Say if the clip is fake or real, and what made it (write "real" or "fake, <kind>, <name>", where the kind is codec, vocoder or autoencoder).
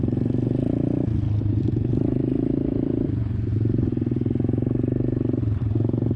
real